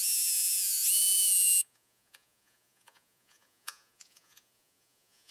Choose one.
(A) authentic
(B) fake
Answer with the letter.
B